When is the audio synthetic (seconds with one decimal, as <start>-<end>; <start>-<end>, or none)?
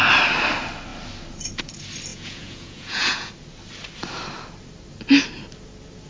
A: 2.1-3.3